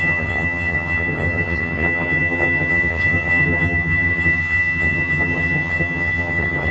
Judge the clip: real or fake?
fake